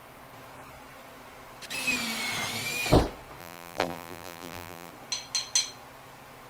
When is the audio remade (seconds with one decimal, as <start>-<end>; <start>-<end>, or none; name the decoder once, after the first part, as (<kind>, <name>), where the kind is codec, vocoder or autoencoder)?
3.4-4.9 (vocoder, BigVGAN v2)